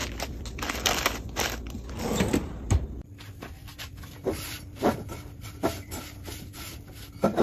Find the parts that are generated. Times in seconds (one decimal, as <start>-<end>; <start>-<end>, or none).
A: none